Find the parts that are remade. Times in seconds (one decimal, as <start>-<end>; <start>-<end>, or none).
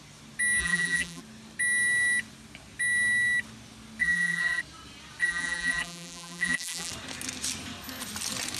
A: 0.6-1.2; 4.0-4.6; 5.2-6.9